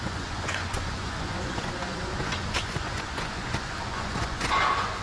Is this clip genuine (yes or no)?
no